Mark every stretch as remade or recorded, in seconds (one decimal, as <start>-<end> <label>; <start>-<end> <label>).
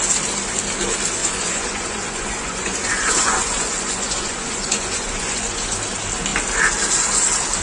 0.0-1.2 recorded; 1.2-5.8 remade; 5.8-7.6 recorded